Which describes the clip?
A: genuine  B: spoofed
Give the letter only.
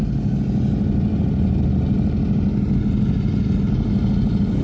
A